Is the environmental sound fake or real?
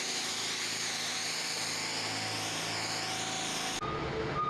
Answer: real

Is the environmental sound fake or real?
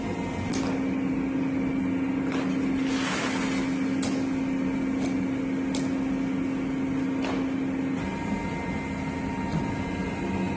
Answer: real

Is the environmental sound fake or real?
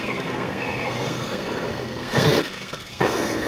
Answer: fake